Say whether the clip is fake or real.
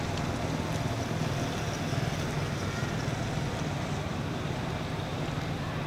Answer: real